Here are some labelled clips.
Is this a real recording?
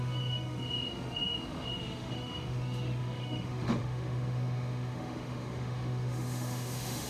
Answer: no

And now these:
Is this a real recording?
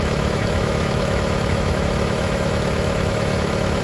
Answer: no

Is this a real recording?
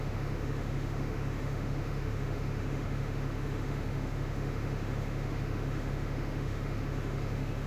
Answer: no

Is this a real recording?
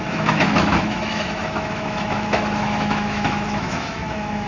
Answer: no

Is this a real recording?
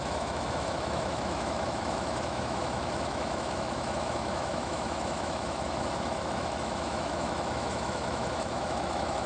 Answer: no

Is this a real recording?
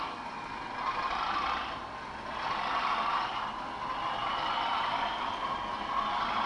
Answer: yes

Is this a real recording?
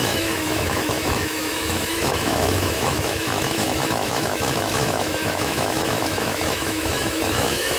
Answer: no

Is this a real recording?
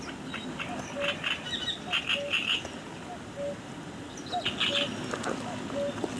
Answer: yes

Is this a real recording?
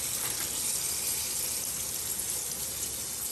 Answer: yes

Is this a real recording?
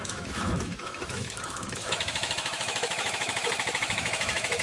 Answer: no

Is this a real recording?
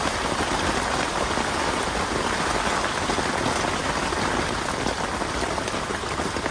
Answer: yes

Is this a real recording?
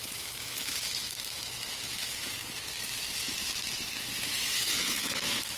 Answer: no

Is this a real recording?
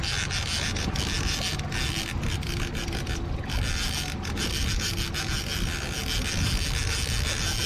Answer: yes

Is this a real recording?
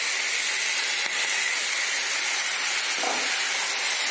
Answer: yes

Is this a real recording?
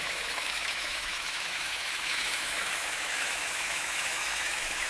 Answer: no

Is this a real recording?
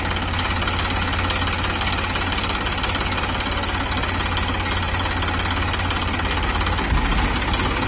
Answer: yes